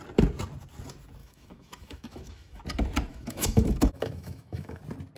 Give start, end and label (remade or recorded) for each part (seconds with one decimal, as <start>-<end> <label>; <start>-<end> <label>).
0.0-1.2 recorded; 1.2-2.6 remade; 2.6-3.1 recorded; 3.1-4.8 remade; 4.8-5.2 recorded